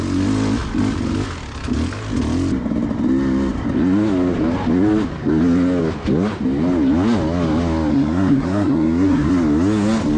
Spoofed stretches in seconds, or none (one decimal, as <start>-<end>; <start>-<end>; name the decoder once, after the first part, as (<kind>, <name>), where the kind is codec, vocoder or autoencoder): 7.9-9.3 (codec, SNAC)